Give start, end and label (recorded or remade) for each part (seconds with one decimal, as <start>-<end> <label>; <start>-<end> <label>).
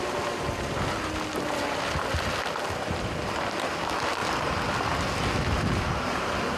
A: 0.0-6.6 recorded